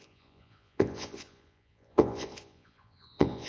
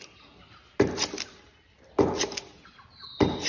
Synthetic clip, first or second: first